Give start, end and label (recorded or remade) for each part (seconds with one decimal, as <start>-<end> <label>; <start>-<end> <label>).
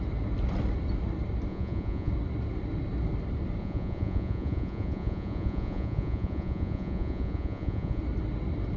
0.0-1.5 recorded; 1.5-2.1 remade; 2.1-3.6 recorded; 3.6-8.0 remade; 8.0-8.8 recorded